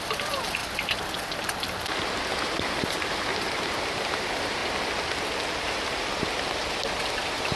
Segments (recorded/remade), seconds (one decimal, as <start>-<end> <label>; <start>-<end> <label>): 0.0-0.6 remade; 0.6-2.7 recorded; 2.7-3.3 remade; 3.3-3.9 recorded; 3.9-4.6 remade; 4.6-6.7 recorded; 6.7-7.6 remade